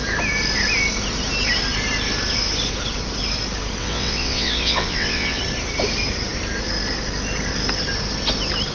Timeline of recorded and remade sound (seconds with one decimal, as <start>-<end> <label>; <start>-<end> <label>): 0.0-3.8 recorded; 3.8-5.4 remade; 5.4-8.7 recorded